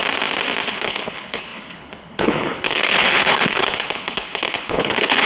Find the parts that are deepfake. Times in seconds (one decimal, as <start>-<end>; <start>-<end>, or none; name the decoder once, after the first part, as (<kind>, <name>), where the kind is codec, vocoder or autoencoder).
0.7-5.3 (codec, HILCodec)